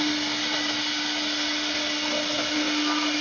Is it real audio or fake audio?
real